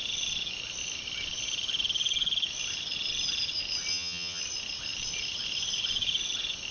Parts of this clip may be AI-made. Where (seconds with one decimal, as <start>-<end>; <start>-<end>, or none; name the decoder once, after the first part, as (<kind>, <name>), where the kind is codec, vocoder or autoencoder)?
3.9-4.4 (vocoder, HiFi-GAN)